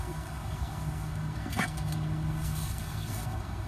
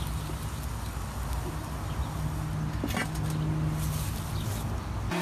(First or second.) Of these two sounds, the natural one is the second